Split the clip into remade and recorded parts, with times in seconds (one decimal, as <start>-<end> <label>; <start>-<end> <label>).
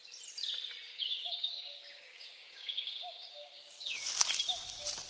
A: 0.0-0.9 recorded; 0.9-4.0 remade; 4.0-5.1 recorded